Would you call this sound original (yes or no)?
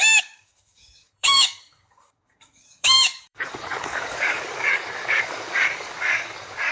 no